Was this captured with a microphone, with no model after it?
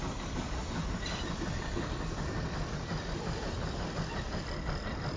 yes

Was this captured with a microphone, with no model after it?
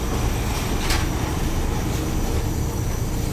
yes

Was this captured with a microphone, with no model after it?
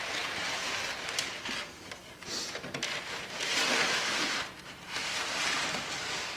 yes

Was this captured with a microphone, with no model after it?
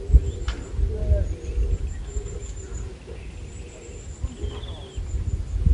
yes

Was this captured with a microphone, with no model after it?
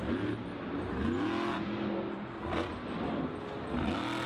yes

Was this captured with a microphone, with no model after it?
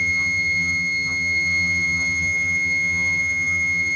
no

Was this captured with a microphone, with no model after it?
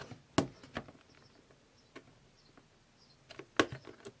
yes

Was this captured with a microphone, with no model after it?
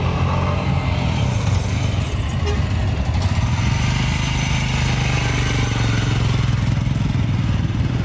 yes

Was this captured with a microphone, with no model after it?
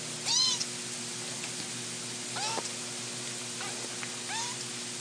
yes